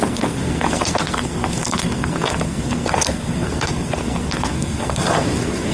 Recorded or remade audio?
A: remade